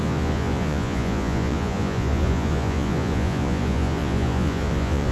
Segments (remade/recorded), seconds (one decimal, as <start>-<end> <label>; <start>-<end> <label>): 0.0-5.1 remade